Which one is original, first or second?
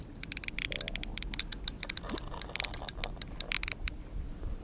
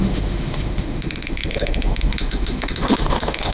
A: first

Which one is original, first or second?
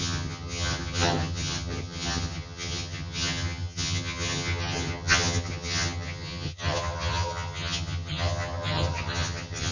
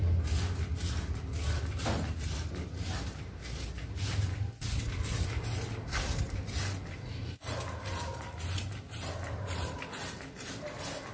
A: second